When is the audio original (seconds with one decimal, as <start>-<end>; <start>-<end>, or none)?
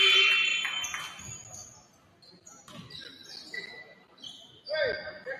0.0-5.4